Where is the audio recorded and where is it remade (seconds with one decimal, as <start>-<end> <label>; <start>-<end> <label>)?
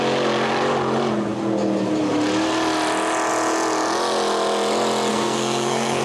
0.0-5.1 recorded; 5.1-6.0 remade